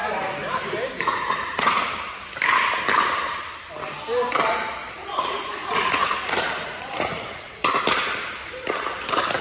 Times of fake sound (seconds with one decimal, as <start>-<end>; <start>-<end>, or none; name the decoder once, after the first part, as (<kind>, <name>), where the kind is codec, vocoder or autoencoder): 1.1-1.8 (vocoder, Vocos); 4.8-7.8